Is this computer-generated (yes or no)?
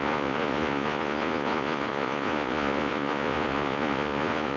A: yes